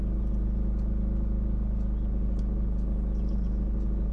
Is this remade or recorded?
recorded